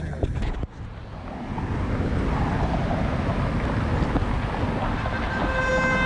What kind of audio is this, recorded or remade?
recorded